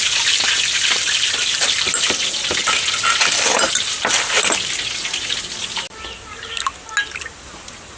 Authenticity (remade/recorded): recorded